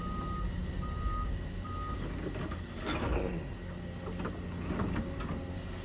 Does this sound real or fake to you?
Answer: real